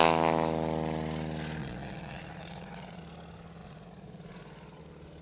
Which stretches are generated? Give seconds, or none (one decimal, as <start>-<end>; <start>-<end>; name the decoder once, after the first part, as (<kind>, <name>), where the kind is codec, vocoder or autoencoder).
1.6-3.0 (vocoder, Vocos); 3.6-4.8